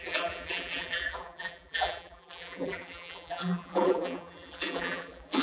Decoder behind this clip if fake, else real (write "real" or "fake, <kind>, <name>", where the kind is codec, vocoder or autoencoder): fake, vocoder, BigVGAN v2